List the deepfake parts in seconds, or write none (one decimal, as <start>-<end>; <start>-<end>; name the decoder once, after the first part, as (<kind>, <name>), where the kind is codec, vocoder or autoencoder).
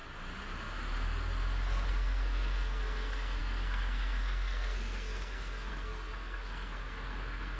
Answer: 1.9-7.6 (codec, SNAC)